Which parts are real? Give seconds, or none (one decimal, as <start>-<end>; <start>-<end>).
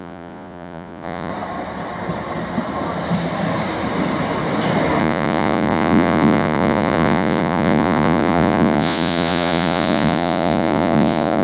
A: 1.3-5.0